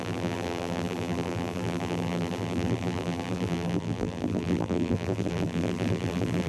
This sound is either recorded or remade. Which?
remade